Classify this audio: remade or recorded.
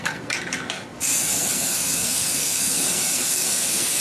remade